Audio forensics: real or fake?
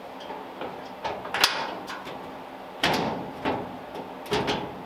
real